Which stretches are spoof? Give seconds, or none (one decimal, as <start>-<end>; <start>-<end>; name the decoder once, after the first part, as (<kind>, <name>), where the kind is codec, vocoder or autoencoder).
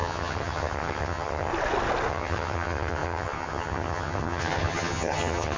0.0-1.5 (vocoder, HiFi-GAN); 2.1-5.6